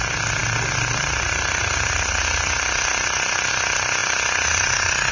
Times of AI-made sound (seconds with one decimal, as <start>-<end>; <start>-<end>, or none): none